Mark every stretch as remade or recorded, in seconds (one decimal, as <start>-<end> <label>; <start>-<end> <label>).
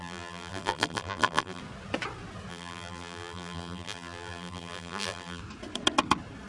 0.0-1.6 remade; 1.6-2.5 recorded; 2.5-5.4 remade; 5.4-6.5 recorded